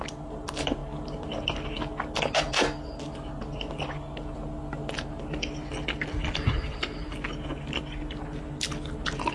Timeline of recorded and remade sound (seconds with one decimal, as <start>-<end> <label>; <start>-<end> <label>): 0.0-9.3 recorded